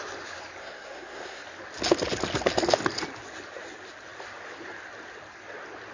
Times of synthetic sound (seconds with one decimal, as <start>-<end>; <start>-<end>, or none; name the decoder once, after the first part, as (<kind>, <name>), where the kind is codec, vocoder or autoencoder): 0.6-1.4 (codec, SNAC)